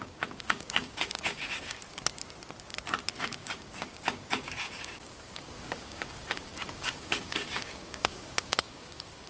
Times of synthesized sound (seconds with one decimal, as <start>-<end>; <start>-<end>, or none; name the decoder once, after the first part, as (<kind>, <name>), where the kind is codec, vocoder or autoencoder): 0.0-1.8 (codec, DAC); 3.2-9.3